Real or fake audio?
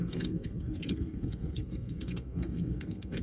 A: fake